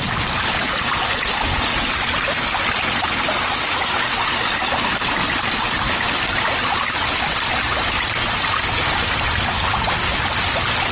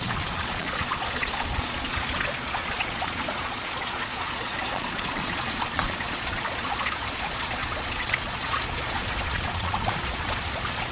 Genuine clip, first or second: first